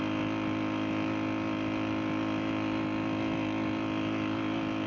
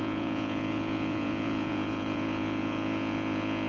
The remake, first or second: second